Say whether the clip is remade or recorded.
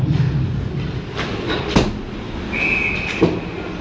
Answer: recorded